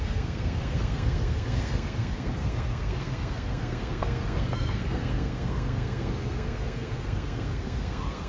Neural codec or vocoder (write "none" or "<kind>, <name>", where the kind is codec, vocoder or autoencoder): codec, SNAC